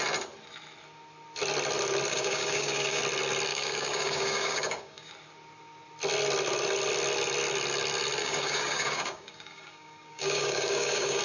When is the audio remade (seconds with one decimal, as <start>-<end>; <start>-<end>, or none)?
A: 2.1-3.0; 3.5-5.1; 8.2-11.2